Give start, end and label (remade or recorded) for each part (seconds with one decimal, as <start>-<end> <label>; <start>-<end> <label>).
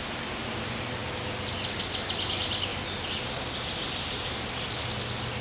0.0-5.4 recorded